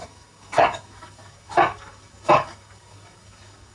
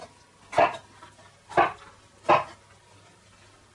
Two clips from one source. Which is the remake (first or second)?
first